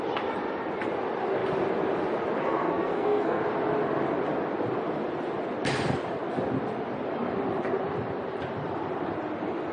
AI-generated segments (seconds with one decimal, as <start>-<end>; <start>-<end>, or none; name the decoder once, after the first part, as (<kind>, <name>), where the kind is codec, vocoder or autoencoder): 2.4-3.4 (codec, SNAC)